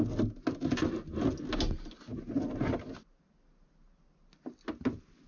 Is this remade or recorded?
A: recorded